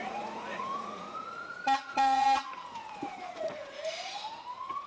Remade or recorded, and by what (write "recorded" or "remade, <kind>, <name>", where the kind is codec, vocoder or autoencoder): remade, vocoder, Vocos